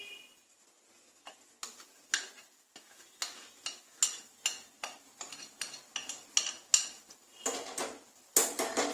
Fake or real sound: real